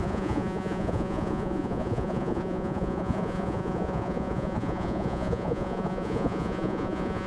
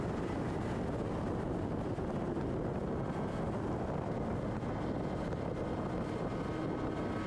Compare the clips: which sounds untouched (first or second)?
second